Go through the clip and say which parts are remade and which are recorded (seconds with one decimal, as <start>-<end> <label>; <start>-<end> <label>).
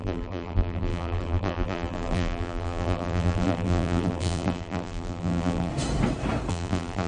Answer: 0.0-5.7 remade; 5.7-6.5 recorded; 6.5-7.1 remade